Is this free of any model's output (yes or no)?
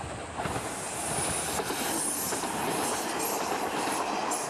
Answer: yes